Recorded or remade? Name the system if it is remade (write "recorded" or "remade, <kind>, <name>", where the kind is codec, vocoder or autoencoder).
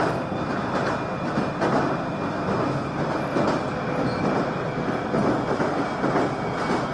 recorded